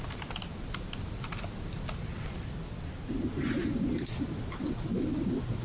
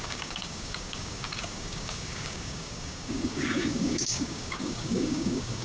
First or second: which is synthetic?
second